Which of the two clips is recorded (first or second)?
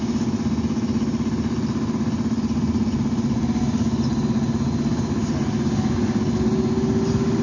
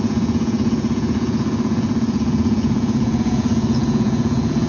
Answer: first